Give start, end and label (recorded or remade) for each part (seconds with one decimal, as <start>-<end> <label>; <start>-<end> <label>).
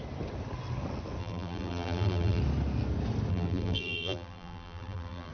0.0-1.2 recorded; 1.2-2.4 remade; 2.4-3.3 recorded; 3.3-5.3 remade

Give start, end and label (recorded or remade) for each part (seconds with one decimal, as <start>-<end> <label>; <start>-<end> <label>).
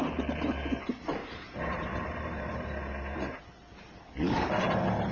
0.0-1.2 recorded; 1.2-3.4 remade; 3.4-5.1 recorded